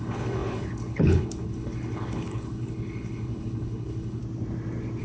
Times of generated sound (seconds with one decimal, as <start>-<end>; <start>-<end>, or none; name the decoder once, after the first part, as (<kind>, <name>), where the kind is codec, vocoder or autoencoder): 0.0-4.2 (codec, HILCodec)